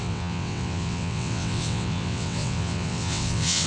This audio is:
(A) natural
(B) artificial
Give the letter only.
B